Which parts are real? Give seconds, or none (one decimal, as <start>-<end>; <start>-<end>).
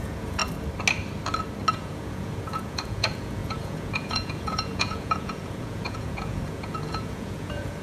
0.4-1.7